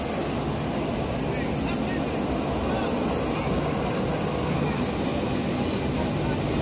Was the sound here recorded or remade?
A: recorded